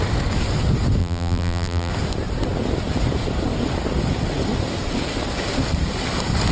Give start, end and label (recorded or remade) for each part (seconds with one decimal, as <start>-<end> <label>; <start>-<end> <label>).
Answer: 0.0-1.0 recorded; 1.0-1.9 remade; 1.9-6.5 recorded